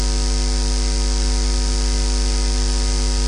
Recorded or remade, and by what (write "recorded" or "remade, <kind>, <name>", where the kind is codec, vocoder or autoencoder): recorded